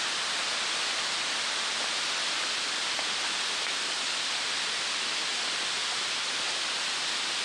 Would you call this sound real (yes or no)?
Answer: yes